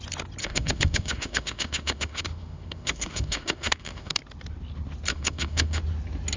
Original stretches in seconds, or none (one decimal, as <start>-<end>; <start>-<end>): 0.0-0.4; 4.2-5.1; 5.8-6.4